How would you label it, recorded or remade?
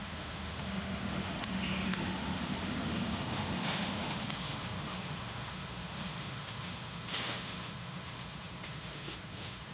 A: remade